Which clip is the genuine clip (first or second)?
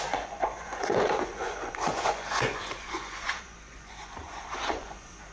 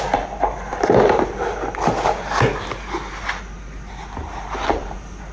second